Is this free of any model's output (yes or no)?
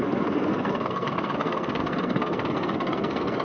no